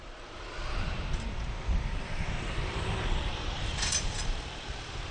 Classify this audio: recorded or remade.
remade